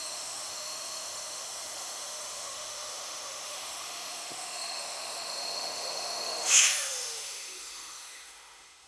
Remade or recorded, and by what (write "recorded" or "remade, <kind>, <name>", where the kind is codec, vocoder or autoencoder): remade, autoencoder, DAC-VAE